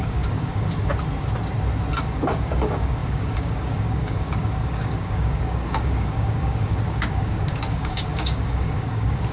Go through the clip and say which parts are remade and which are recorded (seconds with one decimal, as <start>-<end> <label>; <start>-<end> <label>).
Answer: 0.0-0.9 remade; 0.9-2.0 recorded; 2.0-9.3 remade